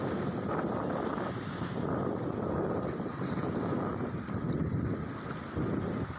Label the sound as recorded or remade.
recorded